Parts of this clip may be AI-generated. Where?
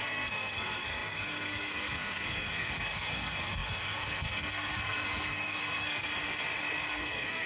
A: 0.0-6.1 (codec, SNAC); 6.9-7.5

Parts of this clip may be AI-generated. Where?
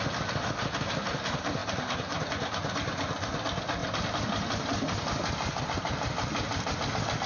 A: none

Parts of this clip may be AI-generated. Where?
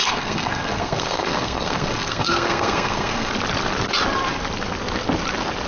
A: 0.0-3.3 (codec, SNAC)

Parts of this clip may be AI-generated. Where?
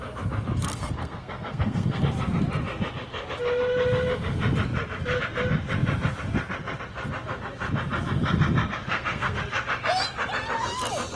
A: 0.7-2.0 (codec, SNAC); 8.9-9.4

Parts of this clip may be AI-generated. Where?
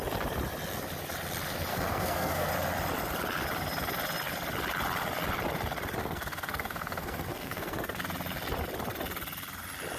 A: 1.7-2.5 (codec, SNAC); 6.0-8.0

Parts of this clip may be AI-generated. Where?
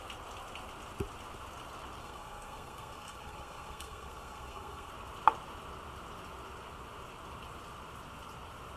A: 2.0-4.9 (codec, SNAC)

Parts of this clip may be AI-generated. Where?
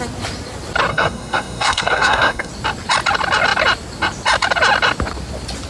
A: 0.9-2.5 (codec, SNAC)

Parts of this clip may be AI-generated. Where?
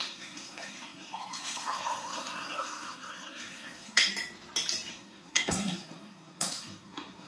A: 0.0-4.1 (codec, SNAC); 4.9-7.3